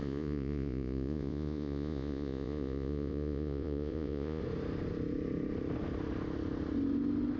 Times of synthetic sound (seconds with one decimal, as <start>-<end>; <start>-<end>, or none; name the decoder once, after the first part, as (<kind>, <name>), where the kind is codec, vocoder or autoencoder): 0.0-4.4 (vocoder, Vocos)